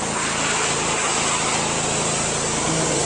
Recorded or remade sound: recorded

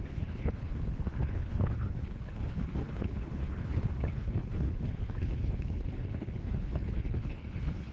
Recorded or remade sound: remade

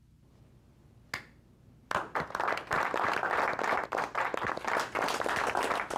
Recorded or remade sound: recorded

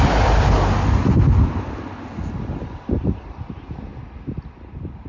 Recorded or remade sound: recorded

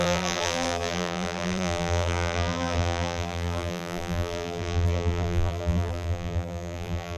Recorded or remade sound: remade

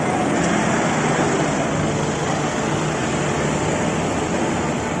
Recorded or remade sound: recorded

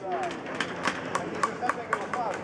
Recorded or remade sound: recorded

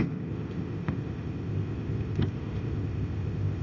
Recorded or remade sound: remade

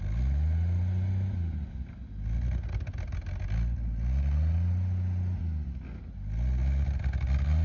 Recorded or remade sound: recorded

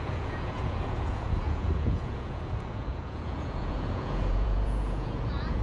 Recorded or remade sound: remade